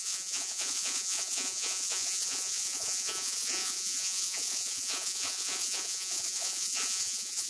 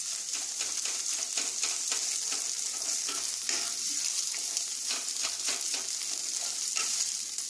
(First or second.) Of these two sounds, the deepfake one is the first